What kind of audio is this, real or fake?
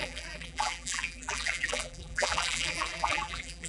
fake